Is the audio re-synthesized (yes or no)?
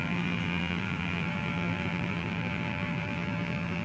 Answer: yes